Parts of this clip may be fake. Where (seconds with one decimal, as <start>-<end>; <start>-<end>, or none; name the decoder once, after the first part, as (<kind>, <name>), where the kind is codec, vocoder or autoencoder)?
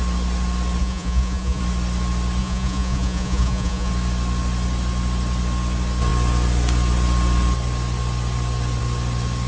0.8-1.6 (vocoder, Vocos); 2.4-3.9